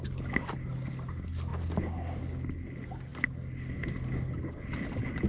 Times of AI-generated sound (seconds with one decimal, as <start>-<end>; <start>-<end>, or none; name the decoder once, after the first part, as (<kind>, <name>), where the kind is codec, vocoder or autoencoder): none